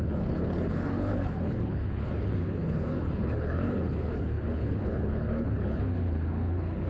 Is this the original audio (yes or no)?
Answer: no